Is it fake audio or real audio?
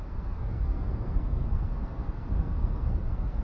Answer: fake